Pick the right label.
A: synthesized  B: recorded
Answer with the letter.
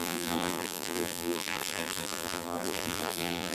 A